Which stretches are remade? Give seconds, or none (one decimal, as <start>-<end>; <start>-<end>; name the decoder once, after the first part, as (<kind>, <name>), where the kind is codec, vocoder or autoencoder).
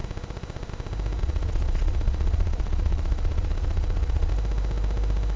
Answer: 1.2-4.3 (vocoder, Vocos)